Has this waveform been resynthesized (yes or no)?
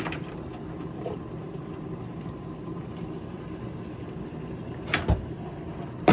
no